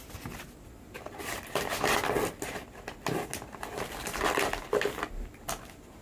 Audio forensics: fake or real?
real